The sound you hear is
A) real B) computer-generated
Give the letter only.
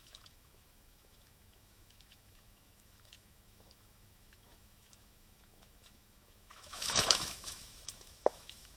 B